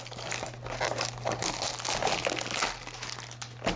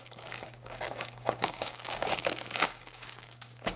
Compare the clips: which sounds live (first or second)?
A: first